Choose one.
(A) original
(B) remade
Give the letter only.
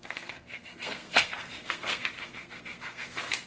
B